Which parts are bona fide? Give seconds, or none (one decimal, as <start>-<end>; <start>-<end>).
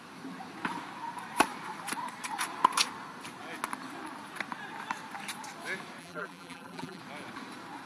0.0-6.0; 7.0-7.9